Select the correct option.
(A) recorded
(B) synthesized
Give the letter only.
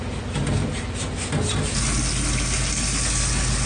A